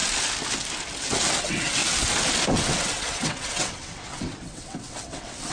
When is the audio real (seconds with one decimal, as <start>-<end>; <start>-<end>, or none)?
0.0-1.4; 1.8-2.5